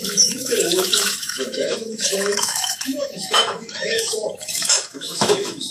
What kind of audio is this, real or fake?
fake